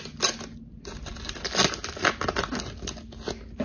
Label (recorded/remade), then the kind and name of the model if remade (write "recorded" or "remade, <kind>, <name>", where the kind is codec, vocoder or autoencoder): recorded